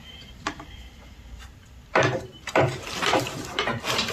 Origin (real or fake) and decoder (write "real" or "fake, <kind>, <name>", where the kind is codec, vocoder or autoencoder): fake, vocoder, BigVGAN v2